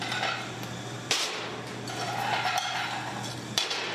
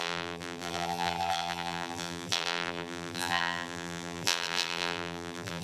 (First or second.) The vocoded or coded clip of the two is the second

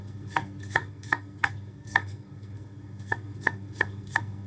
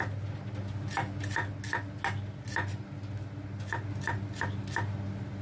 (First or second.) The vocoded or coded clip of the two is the first